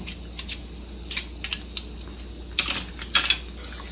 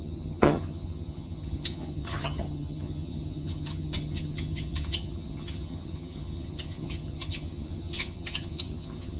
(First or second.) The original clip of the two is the first